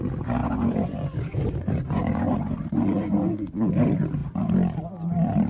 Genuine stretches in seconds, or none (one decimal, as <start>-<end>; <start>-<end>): 0.0-0.4; 3.7-5.5